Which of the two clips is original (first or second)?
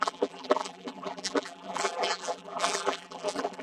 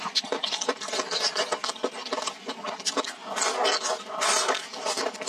second